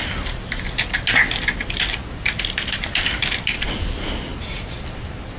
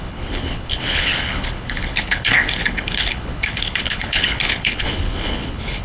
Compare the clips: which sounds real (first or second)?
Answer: first